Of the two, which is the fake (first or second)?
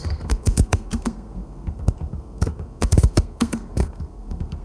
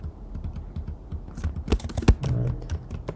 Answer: first